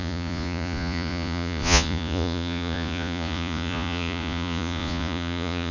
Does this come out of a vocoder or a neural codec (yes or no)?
yes